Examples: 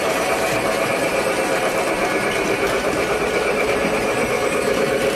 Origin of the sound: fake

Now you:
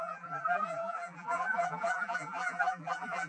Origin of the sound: fake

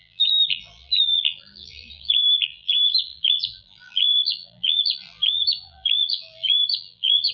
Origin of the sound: fake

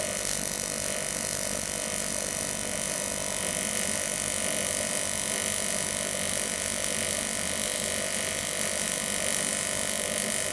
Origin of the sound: real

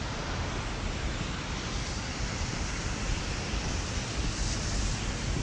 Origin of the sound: real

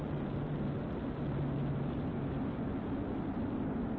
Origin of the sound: real